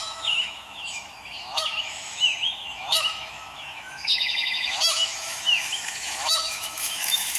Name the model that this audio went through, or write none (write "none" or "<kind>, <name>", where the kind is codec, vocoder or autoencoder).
autoencoder, DAC-VAE